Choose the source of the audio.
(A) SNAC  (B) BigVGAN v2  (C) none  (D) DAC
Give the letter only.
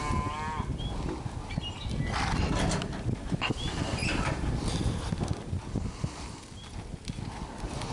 C